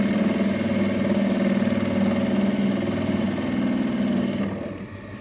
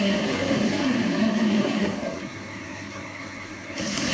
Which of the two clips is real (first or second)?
first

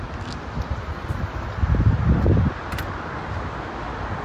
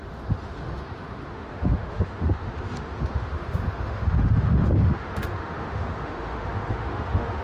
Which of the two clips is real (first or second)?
first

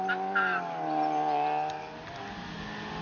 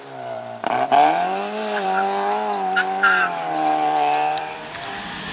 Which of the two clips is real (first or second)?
first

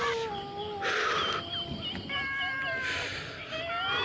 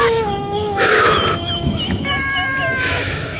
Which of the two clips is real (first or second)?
first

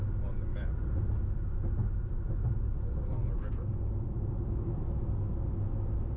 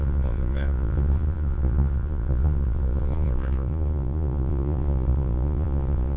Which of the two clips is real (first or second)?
first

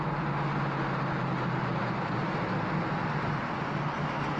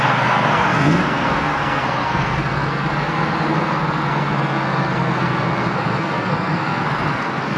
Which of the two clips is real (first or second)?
first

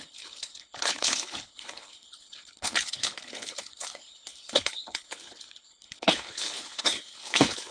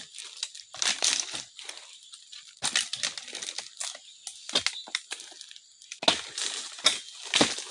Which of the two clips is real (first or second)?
second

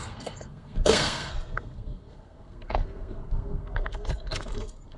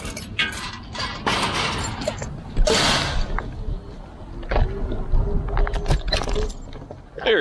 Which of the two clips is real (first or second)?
second